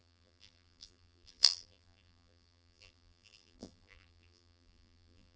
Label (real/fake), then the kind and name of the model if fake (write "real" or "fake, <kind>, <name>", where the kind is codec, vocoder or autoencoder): fake, vocoder, BigVGAN v2